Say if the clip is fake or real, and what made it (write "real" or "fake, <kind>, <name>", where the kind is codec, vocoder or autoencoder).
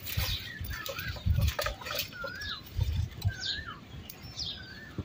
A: fake, vocoder, BigVGAN v2